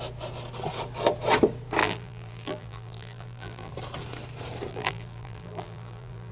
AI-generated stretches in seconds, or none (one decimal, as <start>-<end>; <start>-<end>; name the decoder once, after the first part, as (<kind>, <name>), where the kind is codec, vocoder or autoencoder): 1.8-3.7 (vocoder, BigVGAN v2); 4.7-6.3